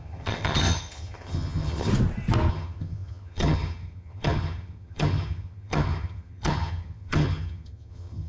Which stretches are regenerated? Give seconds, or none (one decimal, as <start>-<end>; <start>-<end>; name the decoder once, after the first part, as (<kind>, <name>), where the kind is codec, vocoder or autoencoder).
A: 0.0-1.9 (vocoder, HiFi-GAN); 2.5-8.3